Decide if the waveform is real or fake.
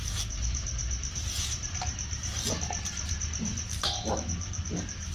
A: fake